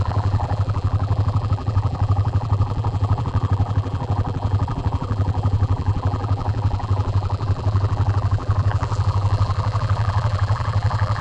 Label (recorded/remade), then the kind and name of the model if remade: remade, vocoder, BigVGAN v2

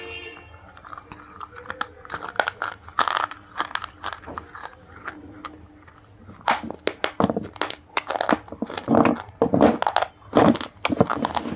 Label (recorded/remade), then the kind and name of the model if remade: recorded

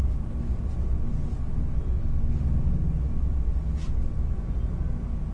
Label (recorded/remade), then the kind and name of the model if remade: recorded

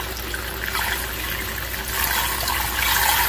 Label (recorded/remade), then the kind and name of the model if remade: recorded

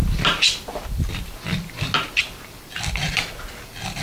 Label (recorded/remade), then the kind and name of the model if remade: recorded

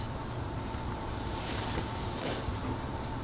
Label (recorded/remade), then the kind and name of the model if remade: remade, vocoder, BigVGAN v2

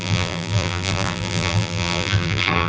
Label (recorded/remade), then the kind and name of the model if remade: remade, vocoder, BigVGAN v2